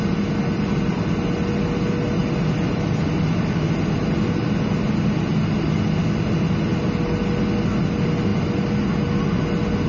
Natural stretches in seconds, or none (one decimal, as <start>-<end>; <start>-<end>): 0.0-9.9